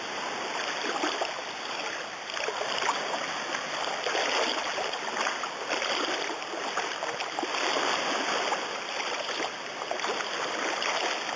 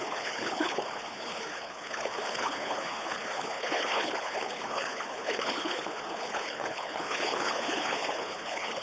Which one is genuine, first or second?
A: first